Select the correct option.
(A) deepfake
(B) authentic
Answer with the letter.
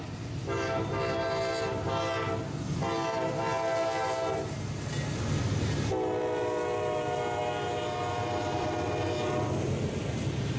B